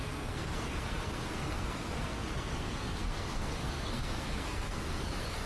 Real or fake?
fake